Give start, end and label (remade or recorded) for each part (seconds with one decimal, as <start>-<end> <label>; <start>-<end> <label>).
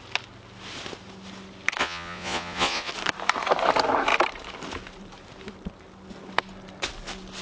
0.0-1.8 recorded; 1.8-2.9 remade; 2.9-7.4 recorded